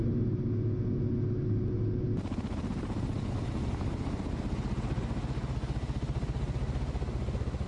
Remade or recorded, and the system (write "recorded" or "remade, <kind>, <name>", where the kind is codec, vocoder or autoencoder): recorded